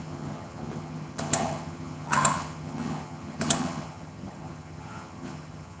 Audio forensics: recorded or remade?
remade